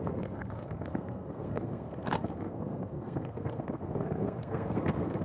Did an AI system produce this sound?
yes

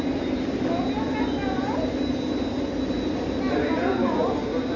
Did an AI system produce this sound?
no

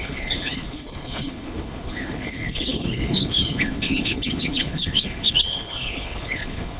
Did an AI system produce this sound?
yes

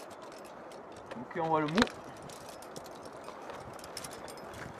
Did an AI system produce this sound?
no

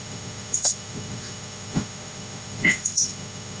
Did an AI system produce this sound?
yes